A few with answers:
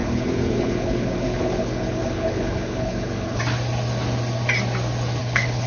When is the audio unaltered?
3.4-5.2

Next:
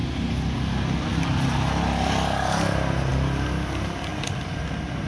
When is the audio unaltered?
0.0-5.1

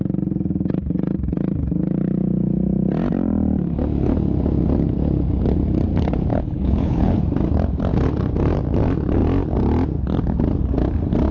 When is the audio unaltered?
0.0-6.3; 7.2-11.3

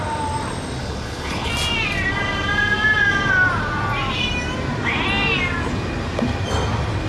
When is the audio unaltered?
0.0-0.8; 1.5-7.1

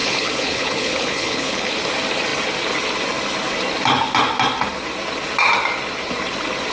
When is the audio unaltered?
1.7-6.7

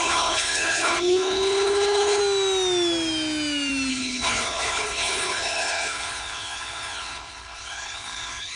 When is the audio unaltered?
2.2-3.9

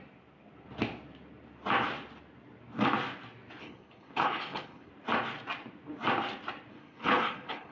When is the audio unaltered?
0.0-3.6; 4.9-6.7